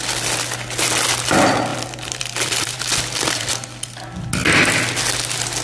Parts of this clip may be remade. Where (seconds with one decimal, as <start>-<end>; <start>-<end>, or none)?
1.7-3.5